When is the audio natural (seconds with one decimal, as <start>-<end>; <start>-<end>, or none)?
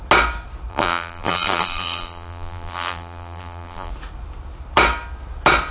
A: 0.0-0.7; 3.9-5.7